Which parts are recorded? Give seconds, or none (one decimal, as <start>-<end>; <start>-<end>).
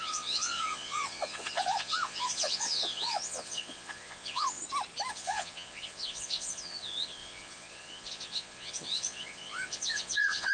4.6-5.1